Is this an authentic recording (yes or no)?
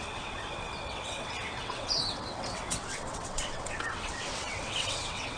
no